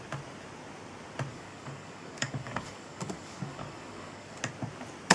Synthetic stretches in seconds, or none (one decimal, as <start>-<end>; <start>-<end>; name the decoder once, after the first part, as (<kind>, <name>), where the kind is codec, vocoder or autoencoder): 1.3-4.4 (codec, DAC)